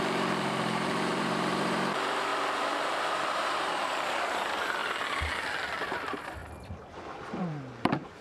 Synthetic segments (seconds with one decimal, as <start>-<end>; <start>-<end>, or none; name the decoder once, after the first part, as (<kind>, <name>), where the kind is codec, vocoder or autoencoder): 0.0-2.3 (vocoder, BigVGAN v2); 2.9-4.8; 5.8-6.4; 7.4-8.2